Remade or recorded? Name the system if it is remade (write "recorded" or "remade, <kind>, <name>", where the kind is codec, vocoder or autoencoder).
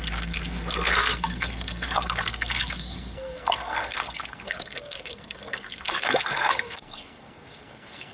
remade, codec, SNAC